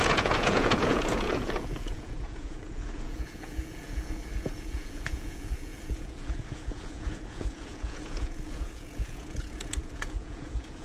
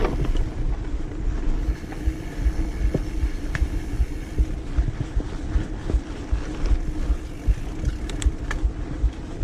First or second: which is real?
second